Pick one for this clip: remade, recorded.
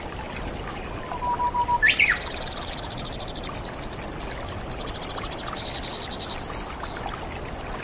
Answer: recorded